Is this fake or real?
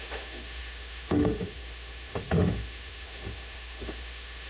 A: fake